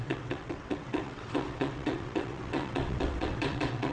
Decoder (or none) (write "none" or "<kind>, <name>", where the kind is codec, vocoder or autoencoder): vocoder, WaveNeXt